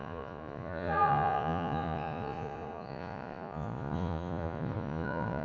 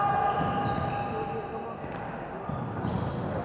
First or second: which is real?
second